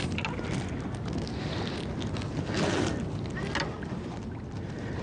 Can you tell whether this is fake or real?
real